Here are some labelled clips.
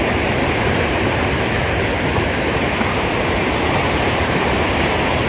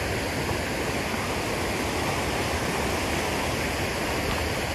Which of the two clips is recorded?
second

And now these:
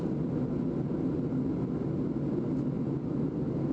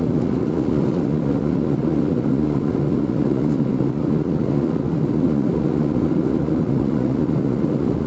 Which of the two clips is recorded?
first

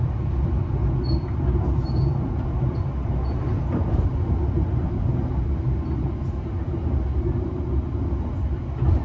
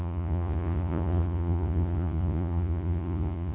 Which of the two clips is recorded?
first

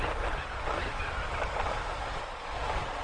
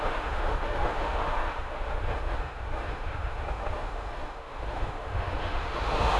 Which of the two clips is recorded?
first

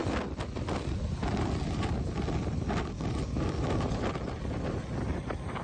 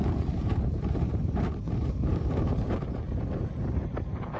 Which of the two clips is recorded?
first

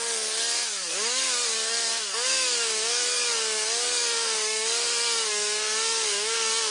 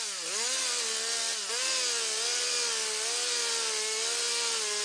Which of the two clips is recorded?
second